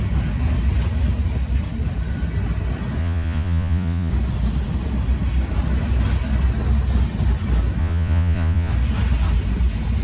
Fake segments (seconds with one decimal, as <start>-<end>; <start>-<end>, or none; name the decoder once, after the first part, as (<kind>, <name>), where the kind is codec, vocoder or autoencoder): 3.0-4.1 (vocoder, Vocos); 7.8-8.7